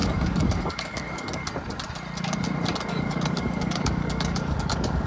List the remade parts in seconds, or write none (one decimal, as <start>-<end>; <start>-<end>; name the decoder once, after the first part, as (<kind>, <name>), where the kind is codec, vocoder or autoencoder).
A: 0.0-1.4 (codec, DAC); 2.9-5.1